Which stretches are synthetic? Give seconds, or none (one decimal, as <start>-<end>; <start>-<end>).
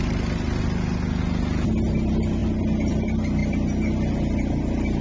none